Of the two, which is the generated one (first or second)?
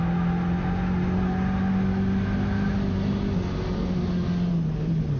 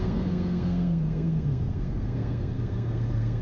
second